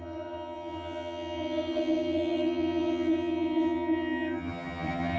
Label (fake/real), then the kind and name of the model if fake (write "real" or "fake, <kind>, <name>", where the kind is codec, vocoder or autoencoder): fake, vocoder, HiFi-GAN